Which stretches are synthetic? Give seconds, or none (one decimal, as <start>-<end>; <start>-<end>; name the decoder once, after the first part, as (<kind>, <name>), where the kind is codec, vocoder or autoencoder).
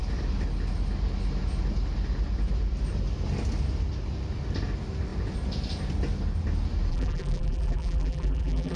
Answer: 6.9-8.8 (vocoder, BigVGAN v2)